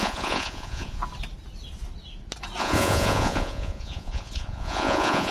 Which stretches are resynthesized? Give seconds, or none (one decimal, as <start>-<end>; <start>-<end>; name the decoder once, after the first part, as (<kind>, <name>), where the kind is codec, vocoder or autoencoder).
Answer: 0.0-1.0 (vocoder, Vocos); 2.6-5.3